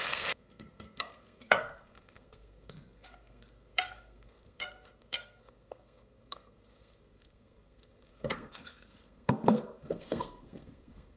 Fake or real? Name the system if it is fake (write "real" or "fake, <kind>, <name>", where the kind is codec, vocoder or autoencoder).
fake, codec, SNAC